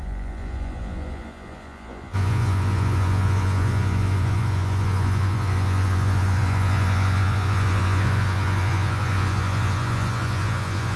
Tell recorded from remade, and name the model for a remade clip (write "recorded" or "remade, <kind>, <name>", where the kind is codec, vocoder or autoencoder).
remade, vocoder, Vocos